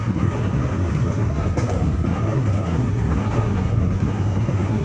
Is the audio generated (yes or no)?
yes